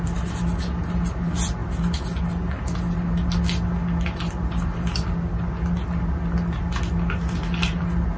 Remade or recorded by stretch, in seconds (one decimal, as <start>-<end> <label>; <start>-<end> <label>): 0.0-8.2 recorded